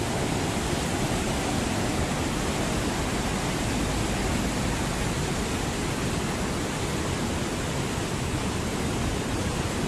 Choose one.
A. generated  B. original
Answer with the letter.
B